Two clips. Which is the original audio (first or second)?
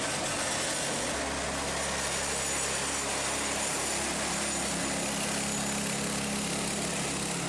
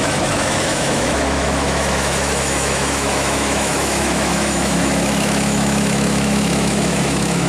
first